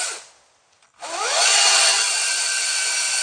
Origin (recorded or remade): recorded